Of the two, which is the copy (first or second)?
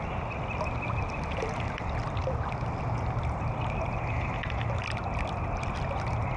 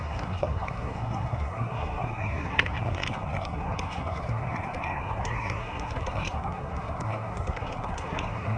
second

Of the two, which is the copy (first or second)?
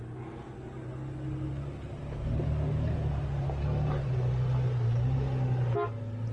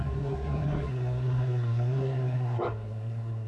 second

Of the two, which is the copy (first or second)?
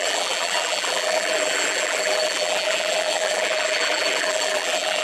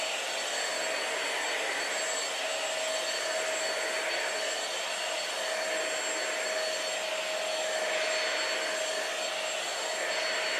first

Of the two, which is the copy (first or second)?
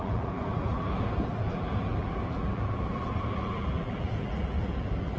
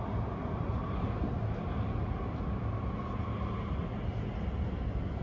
first